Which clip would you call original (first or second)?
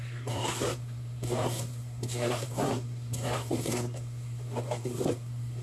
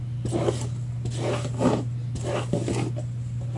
second